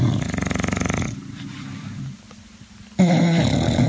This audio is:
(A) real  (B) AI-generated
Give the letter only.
A